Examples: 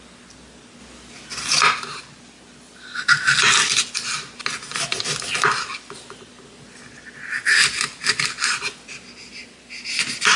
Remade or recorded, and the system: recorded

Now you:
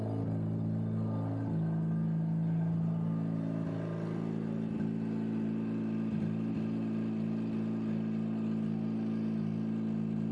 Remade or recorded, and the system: recorded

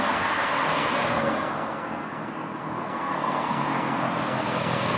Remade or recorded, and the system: remade, codec, SNAC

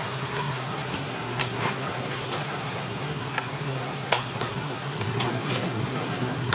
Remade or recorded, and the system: remade, codec, SNAC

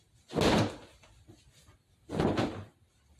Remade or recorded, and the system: recorded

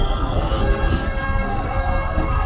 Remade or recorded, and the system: remade, codec, SNAC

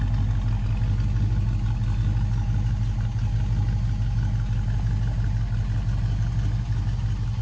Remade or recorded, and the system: recorded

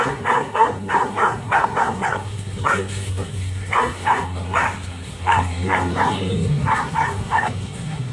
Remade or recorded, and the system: remade, codec, SNAC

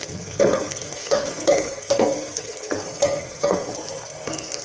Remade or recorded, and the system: remade, codec, SNAC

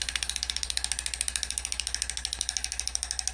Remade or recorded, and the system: recorded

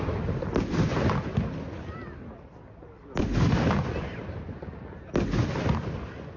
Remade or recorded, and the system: recorded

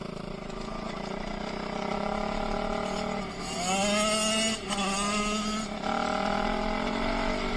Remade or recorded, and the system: recorded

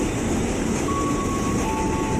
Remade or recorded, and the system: recorded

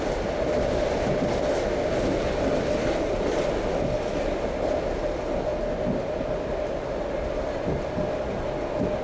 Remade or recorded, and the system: recorded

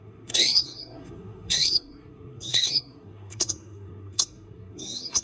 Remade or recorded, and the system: remade, codec, SNAC